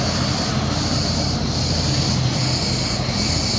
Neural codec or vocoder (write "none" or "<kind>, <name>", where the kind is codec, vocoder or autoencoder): none